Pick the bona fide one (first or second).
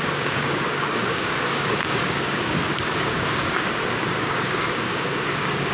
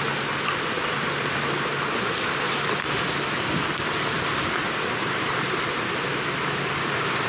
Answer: second